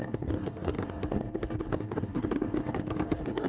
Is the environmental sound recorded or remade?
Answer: remade